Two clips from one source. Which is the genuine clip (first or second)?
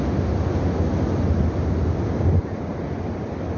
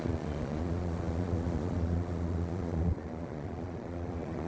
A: first